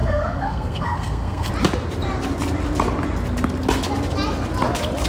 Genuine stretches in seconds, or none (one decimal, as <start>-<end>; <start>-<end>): 1.5-5.1